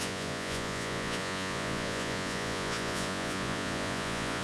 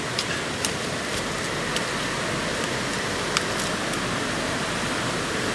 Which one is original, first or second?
second